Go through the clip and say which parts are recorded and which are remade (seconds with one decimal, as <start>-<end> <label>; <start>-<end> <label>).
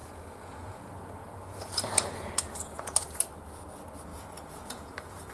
0.0-3.2 remade; 3.2-4.1 recorded; 4.1-5.3 remade